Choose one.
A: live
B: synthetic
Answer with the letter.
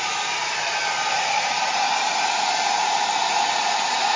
A